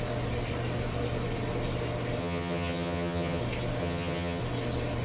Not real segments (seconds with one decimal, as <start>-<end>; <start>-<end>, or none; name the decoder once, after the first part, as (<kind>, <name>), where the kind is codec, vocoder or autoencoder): 2.2-3.4 (vocoder, HiFi-GAN); 3.8-4.4